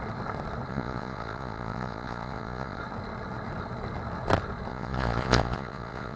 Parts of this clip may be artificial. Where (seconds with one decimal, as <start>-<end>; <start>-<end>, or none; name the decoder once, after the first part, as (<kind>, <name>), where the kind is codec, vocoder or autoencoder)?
0.7-2.8 (vocoder, Vocos); 4.7-6.2